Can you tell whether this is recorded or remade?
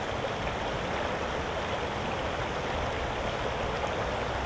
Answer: recorded